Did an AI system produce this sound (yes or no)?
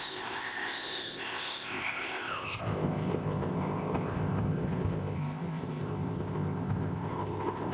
yes